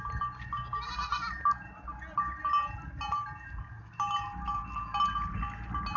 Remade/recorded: recorded